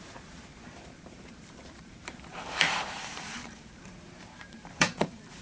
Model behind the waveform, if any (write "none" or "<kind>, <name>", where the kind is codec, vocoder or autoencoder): vocoder, BigVGAN v2